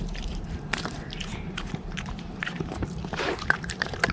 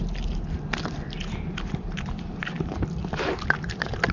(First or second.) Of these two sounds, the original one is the second